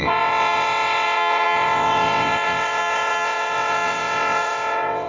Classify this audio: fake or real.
fake